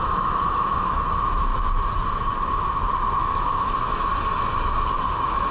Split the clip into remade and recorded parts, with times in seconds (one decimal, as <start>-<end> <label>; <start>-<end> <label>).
0.0-1.5 remade; 1.5-3.2 recorded; 3.2-4.1 remade; 4.1-5.1 recorded; 5.1-5.5 remade

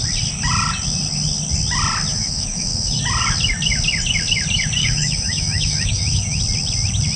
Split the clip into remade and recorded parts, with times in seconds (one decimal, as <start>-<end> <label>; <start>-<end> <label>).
0.0-2.1 recorded; 2.1-3.0 remade; 3.0-4.8 recorded; 4.8-6.4 remade; 6.4-7.2 recorded

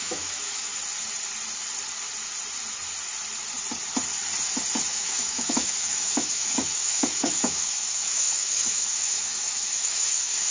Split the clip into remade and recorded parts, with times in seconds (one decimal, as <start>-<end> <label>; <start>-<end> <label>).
0.0-0.7 remade; 0.7-4.9 recorded; 4.9-10.5 remade

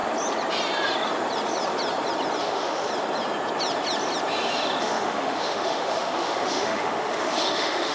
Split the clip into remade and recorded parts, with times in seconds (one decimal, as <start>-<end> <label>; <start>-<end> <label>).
0.0-2.4 recorded; 2.4-2.9 remade; 2.9-4.8 recorded; 4.8-7.9 remade